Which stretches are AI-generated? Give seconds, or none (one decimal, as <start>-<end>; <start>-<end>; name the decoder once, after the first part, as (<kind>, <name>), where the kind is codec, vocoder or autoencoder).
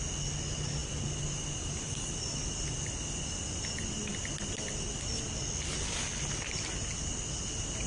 none